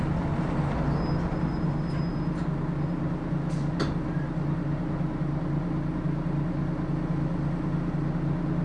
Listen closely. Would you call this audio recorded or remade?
recorded